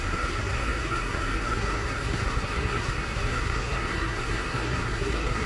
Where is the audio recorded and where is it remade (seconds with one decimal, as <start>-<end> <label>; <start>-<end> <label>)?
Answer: 0.0-5.5 remade